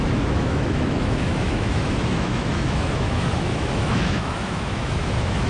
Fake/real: fake